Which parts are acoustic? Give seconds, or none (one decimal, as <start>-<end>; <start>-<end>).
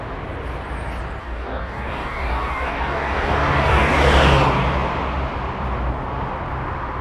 0.0-1.2; 3.9-7.0